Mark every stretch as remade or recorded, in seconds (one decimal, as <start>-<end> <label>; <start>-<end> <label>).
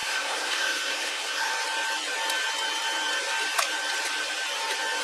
0.0-1.5 remade; 1.5-5.0 recorded